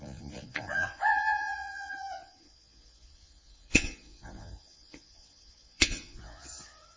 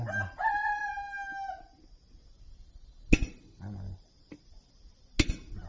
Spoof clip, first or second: first